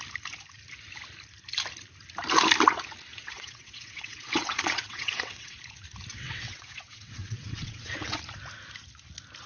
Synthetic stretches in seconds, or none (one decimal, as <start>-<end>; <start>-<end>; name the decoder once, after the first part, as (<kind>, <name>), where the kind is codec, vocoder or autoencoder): 3.1-5.6 (vocoder, WaveNeXt); 6.1-8.2